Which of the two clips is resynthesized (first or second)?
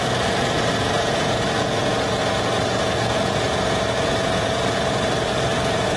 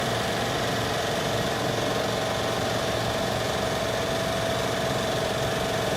first